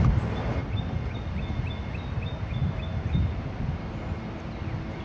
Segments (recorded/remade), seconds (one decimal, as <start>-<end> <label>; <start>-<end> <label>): 0.0-2.6 recorded; 2.6-4.6 remade; 4.6-5.0 recorded